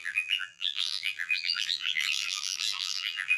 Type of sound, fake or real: fake